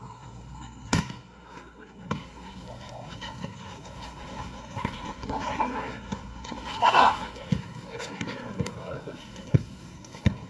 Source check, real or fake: fake